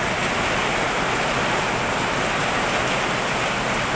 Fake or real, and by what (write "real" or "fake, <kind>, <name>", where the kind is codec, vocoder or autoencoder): real